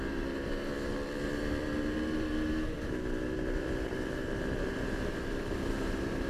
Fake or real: fake